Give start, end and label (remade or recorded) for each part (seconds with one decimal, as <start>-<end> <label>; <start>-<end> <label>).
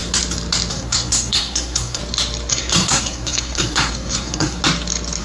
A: 0.0-0.7 recorded; 0.7-2.0 remade; 2.0-2.5 recorded; 2.5-4.6 remade; 4.6-5.2 recorded